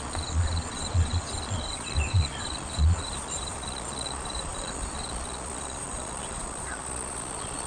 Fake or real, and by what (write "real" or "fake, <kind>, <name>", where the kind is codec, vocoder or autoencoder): fake, vocoder, Vocos